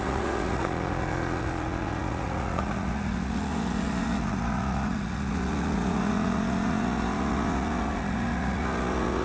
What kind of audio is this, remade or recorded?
remade